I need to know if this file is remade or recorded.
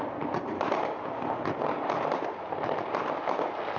recorded